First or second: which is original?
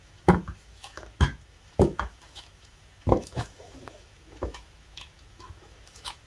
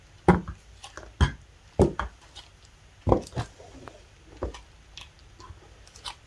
second